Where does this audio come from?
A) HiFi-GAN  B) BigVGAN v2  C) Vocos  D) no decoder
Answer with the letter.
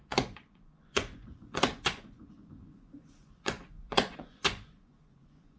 C